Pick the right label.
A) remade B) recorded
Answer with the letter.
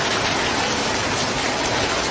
B